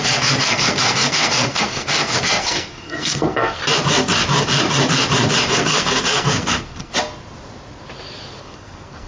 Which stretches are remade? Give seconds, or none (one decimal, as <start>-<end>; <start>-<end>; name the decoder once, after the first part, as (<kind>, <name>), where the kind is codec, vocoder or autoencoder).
0.0-3.6 (codec, SNAC); 5.5-6.9; 8.4-9.1